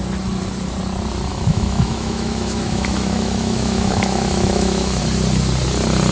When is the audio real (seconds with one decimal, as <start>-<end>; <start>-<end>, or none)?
0.0-1.3; 5.0-6.1